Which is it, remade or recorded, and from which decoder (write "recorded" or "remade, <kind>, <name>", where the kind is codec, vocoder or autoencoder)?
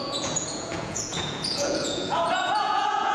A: remade, vocoder, Vocos